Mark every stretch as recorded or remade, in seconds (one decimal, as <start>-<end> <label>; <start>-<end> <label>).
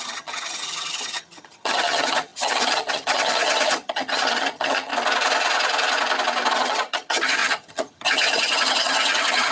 0.0-4.9 remade; 4.9-6.5 recorded; 6.5-9.5 remade